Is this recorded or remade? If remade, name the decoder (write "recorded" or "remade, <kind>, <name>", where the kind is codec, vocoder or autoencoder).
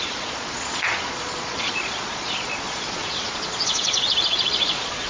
remade, vocoder, Vocos